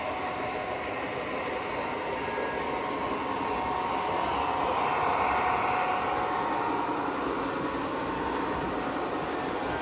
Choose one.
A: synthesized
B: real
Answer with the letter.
B